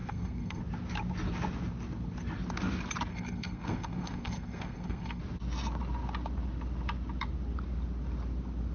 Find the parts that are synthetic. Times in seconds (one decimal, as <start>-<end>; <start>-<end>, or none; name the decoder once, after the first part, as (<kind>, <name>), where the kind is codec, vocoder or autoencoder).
0.0-0.6 (codec, SNAC); 3.1-5.2